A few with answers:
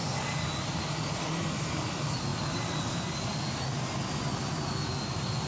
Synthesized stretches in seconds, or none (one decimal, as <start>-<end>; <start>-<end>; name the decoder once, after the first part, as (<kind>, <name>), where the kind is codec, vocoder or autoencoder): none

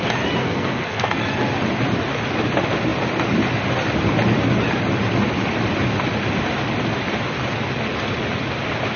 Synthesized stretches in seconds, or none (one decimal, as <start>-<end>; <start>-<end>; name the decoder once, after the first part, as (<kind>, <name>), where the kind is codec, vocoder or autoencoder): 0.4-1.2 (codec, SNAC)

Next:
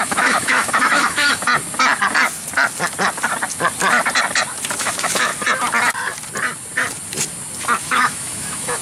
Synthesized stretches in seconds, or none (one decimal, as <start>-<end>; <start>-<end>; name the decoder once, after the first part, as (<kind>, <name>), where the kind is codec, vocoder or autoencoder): 0.0-1.5 (autoencoder, DAC-VAE); 4.8-5.3; 7.8-8.8

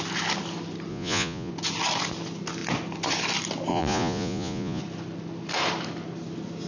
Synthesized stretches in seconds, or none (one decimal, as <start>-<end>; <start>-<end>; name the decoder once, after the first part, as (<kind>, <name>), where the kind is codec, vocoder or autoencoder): 0.9-1.5 (vocoder, Vocos); 3.7-4.8

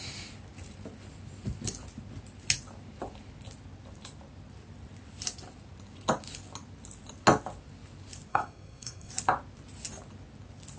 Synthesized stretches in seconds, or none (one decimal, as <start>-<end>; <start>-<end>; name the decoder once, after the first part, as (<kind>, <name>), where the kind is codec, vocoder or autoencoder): 8.3-9.1 (codec, SNAC)

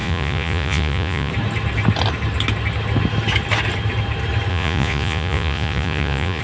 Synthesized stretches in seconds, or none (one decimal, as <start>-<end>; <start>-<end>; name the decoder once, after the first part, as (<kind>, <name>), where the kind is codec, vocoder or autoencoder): 0.0-1.3 (vocoder, Vocos); 4.5-6.4

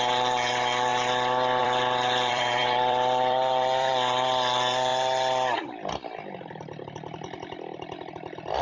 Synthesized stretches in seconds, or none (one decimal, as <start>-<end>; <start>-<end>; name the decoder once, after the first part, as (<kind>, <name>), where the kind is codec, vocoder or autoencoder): 0.0-0.9 (vocoder, BigVGAN v2); 1.6-4.9